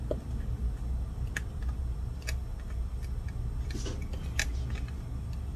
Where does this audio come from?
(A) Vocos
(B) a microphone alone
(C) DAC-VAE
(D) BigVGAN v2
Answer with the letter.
B